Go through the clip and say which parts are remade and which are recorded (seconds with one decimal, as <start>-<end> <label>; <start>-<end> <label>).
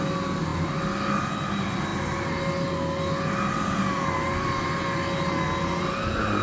0.0-6.4 recorded